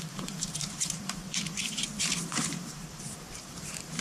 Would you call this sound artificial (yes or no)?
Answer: yes